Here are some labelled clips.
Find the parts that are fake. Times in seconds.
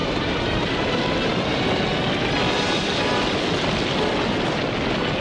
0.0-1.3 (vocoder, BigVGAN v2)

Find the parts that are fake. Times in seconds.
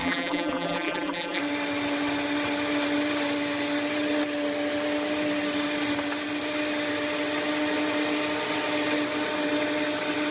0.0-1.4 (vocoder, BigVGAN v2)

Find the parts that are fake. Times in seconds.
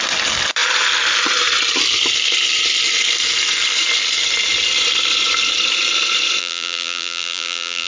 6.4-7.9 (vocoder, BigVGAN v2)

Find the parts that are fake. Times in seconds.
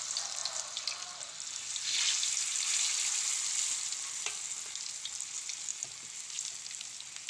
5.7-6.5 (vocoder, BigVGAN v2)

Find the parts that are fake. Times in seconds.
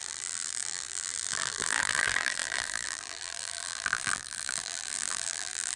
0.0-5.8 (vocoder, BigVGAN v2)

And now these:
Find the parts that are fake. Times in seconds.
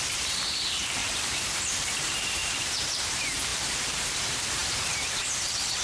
0.0-2.4 (vocoder, BigVGAN v2); 3.1-5.8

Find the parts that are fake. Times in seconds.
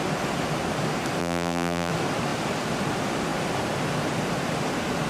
1.2-1.9 (vocoder, BigVGAN v2)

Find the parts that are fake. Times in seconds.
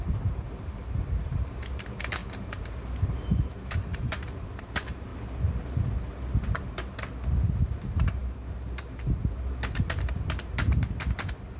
0.0-5.1 (vocoder, BigVGAN v2); 7.6-11.6